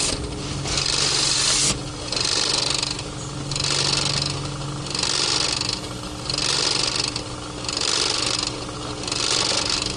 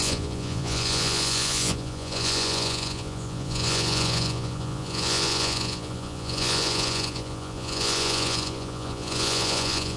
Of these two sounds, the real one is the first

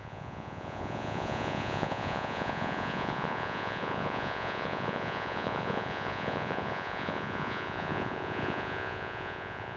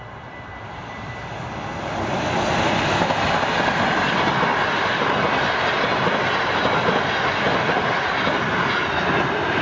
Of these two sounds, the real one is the second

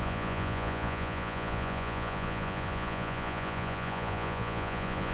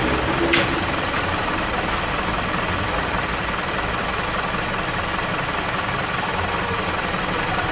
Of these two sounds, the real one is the second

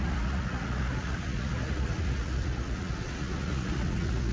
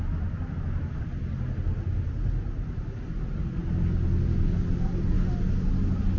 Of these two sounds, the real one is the second